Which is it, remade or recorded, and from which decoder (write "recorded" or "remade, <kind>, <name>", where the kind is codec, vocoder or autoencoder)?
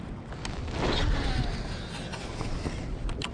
recorded